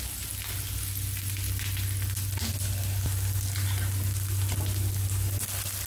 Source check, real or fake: real